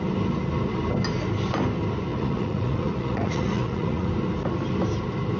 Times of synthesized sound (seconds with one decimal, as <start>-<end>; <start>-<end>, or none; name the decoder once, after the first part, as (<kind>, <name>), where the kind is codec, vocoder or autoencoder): 2.1-4.1 (vocoder, Vocos)